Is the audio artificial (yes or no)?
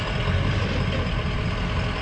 no